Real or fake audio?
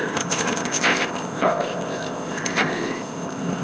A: fake